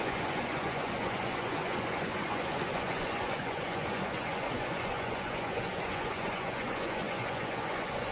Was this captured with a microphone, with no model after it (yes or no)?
no